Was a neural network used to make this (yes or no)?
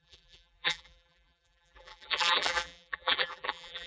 yes